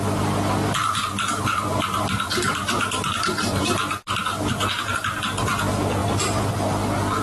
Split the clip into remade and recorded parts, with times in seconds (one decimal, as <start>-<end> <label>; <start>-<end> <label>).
0.0-0.6 recorded; 0.6-4.1 remade; 4.1-6.0 recorded; 6.0-6.5 remade; 6.5-7.2 recorded